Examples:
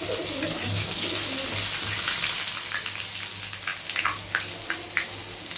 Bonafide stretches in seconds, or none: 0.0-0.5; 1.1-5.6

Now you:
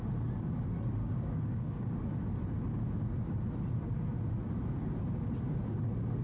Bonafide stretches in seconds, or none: 0.0-1.0; 2.0-6.2